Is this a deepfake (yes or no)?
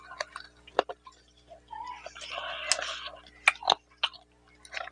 no